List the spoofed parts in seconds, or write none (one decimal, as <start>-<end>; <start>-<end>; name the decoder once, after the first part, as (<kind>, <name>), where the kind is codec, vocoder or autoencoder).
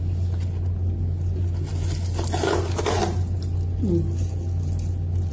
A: none